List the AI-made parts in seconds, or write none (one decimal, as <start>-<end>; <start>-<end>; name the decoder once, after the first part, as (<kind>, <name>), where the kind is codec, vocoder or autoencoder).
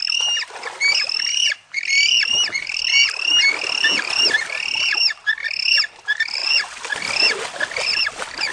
6.4-7.0 (vocoder, BigVGAN v2)